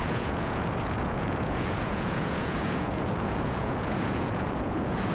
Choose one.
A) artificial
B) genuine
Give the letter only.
A